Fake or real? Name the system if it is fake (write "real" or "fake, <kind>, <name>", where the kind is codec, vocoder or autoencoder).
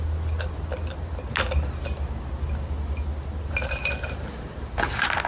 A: real